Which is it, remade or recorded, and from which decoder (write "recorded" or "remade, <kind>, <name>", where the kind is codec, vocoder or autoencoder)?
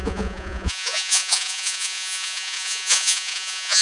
remade, vocoder, Vocos